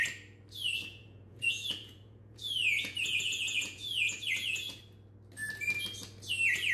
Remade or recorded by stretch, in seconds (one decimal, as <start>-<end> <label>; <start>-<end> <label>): 0.0-0.8 recorded; 0.8-4.8 remade; 4.8-6.7 recorded